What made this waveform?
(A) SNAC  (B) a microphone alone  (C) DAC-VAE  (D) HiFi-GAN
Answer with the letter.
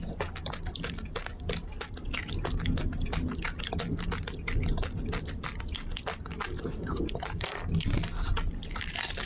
B